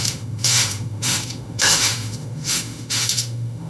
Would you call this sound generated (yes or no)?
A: yes